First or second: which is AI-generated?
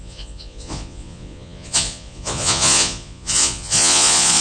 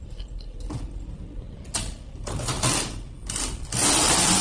first